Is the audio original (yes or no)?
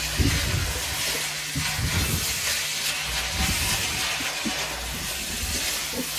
yes